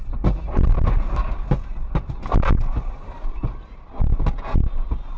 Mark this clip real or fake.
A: real